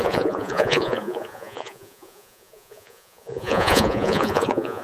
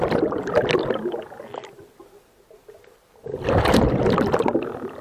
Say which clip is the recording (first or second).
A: second